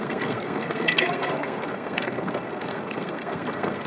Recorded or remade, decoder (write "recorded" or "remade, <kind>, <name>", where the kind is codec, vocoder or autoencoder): remade, codec, SNAC